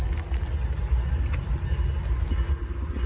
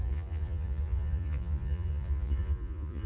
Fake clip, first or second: second